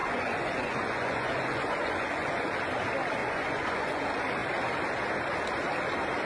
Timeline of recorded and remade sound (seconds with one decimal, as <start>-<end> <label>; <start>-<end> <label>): 0.0-2.5 remade; 2.5-3.2 recorded; 3.2-4.0 remade; 4.0-6.3 recorded